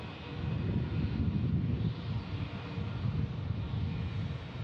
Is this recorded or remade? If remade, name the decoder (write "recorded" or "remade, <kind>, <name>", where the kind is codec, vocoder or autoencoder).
recorded